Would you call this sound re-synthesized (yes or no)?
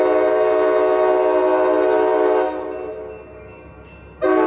no